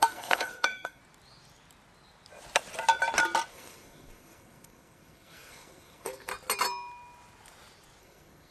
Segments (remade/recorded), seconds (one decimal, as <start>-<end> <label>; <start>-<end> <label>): 0.0-1.0 remade; 1.0-3.5 recorded; 3.5-6.3 remade; 6.3-8.0 recorded; 8.0-8.5 remade